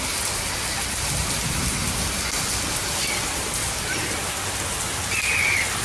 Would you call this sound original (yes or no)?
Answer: yes